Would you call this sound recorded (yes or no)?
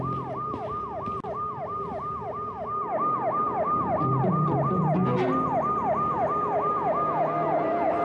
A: yes